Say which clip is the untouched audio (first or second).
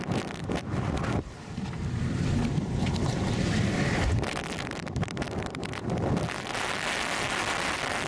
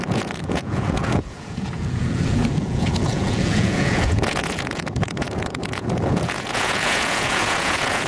first